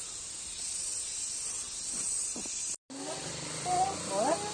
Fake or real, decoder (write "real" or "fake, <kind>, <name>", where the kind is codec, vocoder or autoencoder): real